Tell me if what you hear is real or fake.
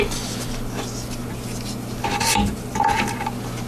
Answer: real